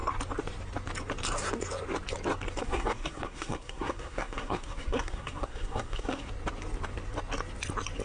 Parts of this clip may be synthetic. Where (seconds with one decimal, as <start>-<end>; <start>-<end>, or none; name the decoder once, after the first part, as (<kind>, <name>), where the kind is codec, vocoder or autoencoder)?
2.6-6.3 (codec, SNAC)